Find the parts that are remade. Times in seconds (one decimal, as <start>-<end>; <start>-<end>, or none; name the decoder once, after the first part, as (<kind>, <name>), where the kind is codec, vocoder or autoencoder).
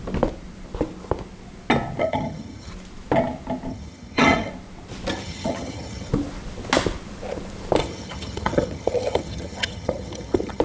2.0-2.7 (vocoder, HiFi-GAN); 3.7-4.5; 5.1-6.1; 7.8-10.6